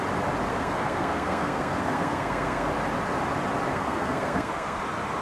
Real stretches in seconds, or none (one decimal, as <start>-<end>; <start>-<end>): 0.0-0.5; 2.7-3.7; 4.8-5.2